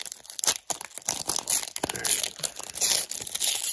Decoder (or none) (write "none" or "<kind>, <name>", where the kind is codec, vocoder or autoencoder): none